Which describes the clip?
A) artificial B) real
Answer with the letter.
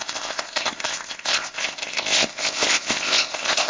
A